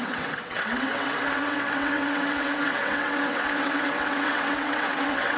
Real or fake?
fake